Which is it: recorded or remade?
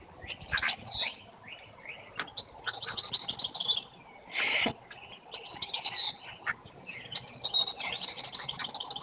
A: recorded